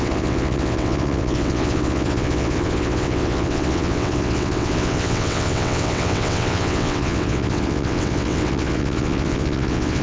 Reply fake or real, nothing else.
fake